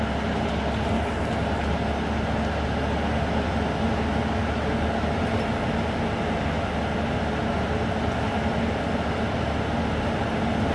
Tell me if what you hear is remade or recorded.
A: recorded